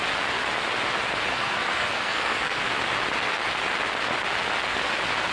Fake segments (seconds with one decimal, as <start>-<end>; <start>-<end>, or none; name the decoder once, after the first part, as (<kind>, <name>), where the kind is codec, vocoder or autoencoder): 1.3-2.6 (codec, SNAC)